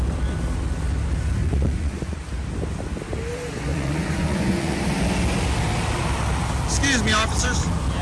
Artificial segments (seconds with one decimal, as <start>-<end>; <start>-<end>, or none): 1.4-2.2; 3.7-4.8